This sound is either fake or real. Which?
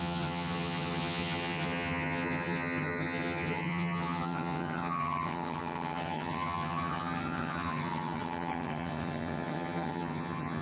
fake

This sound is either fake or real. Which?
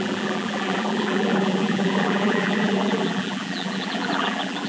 fake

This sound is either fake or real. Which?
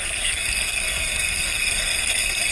fake